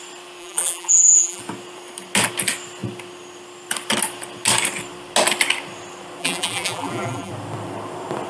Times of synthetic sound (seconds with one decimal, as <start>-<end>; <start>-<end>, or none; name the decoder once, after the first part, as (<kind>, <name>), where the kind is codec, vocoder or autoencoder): 0.4-1.4 (vocoder, BigVGAN v2); 6.2-7.3